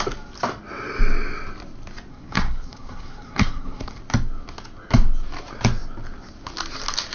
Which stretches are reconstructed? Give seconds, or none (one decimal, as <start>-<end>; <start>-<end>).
2.1-4.0